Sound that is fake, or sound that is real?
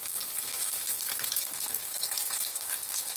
fake